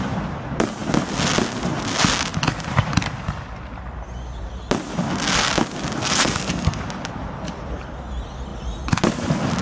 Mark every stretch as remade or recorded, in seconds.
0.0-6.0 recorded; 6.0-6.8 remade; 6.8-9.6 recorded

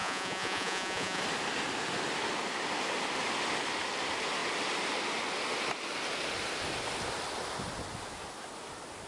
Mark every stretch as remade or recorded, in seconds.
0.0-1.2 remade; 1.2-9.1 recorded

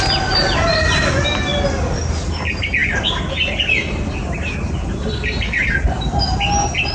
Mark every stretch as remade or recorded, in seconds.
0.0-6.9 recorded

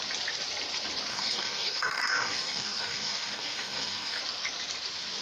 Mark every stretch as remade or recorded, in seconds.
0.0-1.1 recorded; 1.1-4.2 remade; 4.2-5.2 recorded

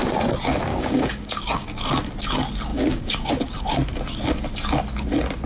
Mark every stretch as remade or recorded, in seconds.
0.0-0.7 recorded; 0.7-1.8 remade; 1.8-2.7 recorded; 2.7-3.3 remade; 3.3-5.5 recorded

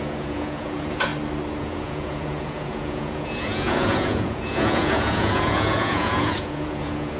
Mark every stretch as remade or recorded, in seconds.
0.0-1.1 remade; 1.1-1.6 recorded; 1.6-7.2 remade